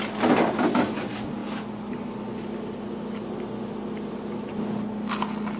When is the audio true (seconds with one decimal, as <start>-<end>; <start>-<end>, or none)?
0.0-5.6